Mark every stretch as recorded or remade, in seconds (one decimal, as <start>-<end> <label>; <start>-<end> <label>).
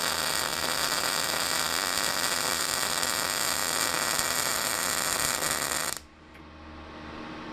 0.0-7.5 recorded